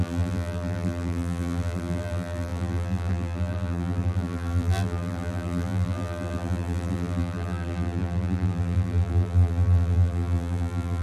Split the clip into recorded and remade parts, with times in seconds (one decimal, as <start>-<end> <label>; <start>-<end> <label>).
0.0-11.0 remade